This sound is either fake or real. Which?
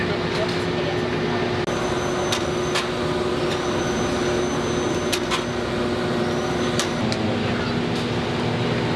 real